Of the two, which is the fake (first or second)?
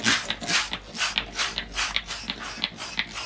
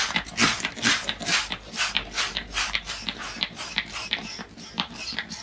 second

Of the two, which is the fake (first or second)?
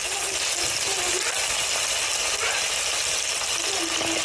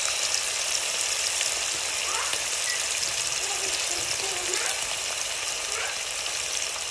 second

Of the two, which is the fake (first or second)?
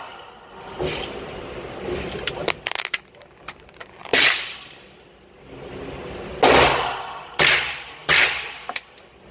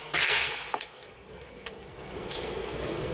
second